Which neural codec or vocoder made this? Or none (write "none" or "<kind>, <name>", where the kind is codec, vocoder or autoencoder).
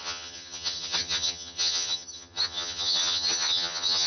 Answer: vocoder, HiFi-GAN